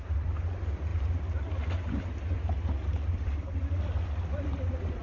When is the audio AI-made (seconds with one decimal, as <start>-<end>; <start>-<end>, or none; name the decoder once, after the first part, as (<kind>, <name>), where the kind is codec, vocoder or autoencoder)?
none